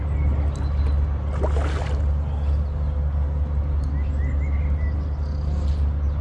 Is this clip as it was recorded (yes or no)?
yes